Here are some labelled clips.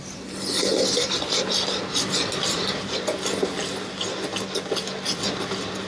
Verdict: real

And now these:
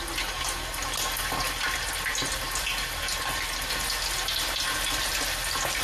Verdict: real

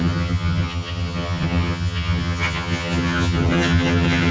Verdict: fake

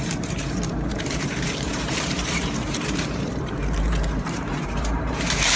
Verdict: fake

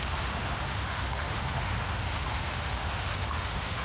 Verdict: fake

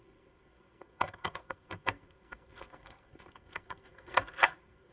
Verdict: fake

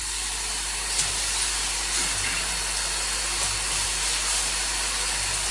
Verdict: real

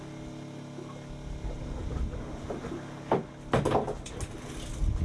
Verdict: real